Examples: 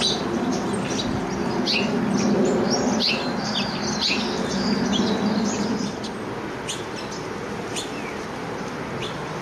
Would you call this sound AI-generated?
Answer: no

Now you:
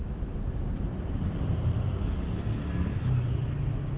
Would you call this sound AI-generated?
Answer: no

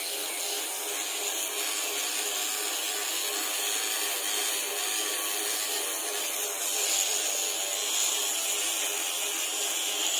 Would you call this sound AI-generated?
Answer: no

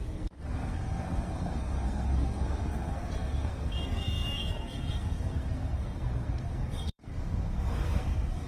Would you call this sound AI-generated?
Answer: yes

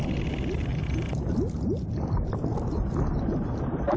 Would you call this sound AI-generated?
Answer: no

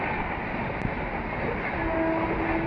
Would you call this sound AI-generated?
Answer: no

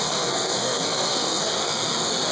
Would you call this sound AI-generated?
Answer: yes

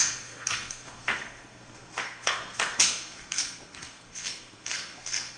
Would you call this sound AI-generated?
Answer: yes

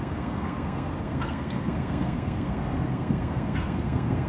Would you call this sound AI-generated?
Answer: yes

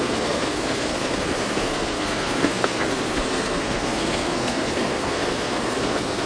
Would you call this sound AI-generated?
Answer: yes